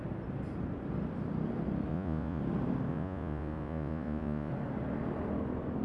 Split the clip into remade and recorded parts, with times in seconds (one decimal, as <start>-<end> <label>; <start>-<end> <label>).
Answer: 0.0-1.9 recorded; 1.9-2.4 remade; 2.4-2.9 recorded; 2.9-4.5 remade; 4.5-5.8 recorded